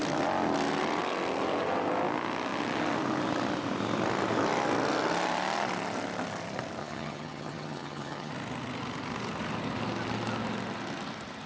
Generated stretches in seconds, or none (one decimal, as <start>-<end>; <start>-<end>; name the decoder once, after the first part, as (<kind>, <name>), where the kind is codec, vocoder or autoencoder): 6.8-8.3 (vocoder, HiFi-GAN)

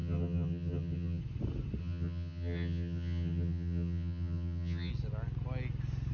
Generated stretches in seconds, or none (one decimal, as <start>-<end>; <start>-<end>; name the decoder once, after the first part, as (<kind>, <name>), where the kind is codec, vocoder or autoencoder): 0.0-1.2 (vocoder, HiFi-GAN); 1.8-4.9

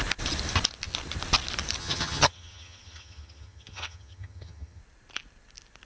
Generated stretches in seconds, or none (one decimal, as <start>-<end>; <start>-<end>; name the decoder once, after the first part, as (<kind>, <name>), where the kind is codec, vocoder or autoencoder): 1.8-4.8 (vocoder, HiFi-GAN)

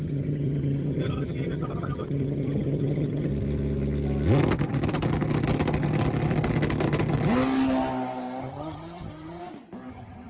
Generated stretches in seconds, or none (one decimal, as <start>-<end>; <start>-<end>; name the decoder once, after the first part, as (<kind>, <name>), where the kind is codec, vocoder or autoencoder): 0.0-3.3 (vocoder, HiFi-GAN); 8.4-9.4; 9.9-10.3

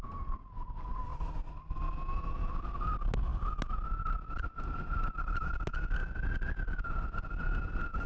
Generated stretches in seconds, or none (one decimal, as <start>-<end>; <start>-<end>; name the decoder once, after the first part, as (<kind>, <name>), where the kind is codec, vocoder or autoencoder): none

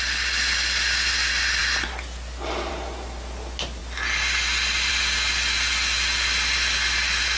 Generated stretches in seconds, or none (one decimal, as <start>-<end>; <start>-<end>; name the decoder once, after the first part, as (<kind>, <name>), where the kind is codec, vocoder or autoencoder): none

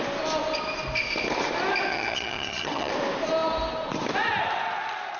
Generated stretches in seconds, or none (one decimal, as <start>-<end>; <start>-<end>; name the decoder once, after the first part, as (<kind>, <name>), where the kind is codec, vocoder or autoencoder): 1.9-2.9 (vocoder, HiFi-GAN)